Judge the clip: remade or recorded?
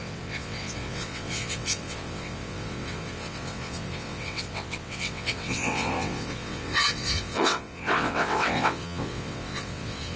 remade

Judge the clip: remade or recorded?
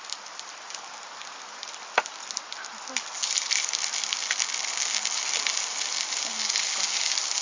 recorded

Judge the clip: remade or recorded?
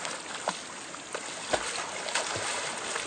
recorded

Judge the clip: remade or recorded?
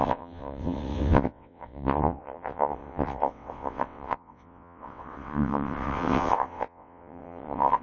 remade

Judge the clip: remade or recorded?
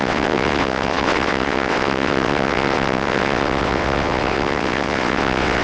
remade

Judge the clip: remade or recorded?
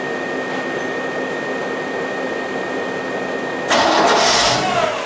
recorded